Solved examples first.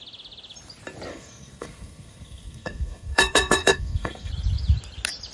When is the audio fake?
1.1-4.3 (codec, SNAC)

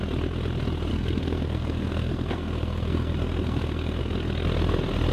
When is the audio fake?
0.9-4.0 (codec, SNAC)

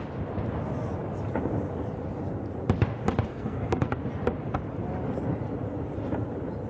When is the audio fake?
3.3-3.9 (codec, SNAC)

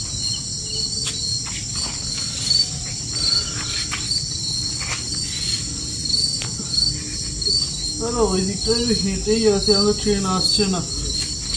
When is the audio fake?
none